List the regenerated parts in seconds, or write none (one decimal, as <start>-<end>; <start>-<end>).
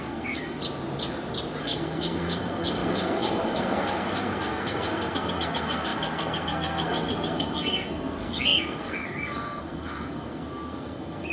0.0-0.6; 1.6-11.3